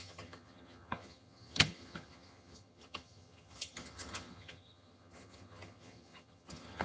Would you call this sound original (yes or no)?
no